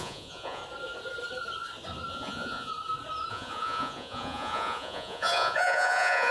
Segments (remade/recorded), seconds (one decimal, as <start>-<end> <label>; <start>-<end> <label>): 0.0-0.6 remade; 0.6-2.1 recorded; 2.1-2.7 remade; 2.7-3.3 recorded; 3.3-6.3 remade